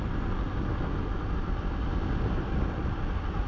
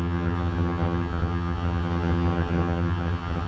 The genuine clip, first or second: first